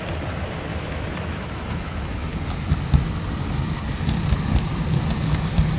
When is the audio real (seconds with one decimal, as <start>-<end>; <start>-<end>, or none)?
0.0-0.7; 2.3-5.8